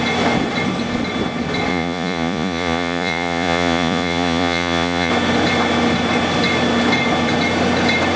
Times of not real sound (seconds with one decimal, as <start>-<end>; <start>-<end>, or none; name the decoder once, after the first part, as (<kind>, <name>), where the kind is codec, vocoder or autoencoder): 1.7-5.1 (vocoder, Vocos)